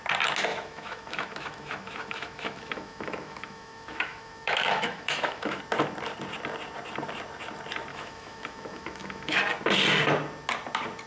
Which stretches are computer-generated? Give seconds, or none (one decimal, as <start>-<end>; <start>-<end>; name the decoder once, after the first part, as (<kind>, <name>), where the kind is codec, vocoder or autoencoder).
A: 0.5-5.6 (autoencoder, DAC-VAE); 7.9-9.4

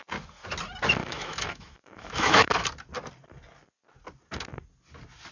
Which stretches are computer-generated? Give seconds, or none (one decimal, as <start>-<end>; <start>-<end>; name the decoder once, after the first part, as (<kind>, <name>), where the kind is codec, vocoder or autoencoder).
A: 1.0-2.5 (autoencoder, DAC-VAE)

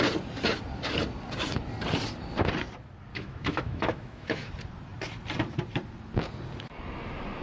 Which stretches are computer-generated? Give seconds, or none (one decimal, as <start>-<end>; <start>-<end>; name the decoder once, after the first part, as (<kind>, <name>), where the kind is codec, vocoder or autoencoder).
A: 3.1-4.5 (autoencoder, DAC-VAE)

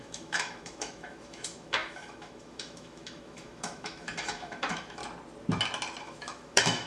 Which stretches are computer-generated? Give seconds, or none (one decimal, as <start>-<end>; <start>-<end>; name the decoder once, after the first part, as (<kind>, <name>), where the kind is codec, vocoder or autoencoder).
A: 0.0-5.0 (autoencoder, DAC-VAE); 6.0-6.9